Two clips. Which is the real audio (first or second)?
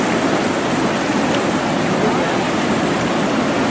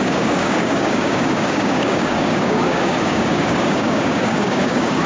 first